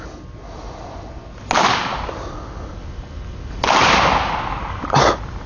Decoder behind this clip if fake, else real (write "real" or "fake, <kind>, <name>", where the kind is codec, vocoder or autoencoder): real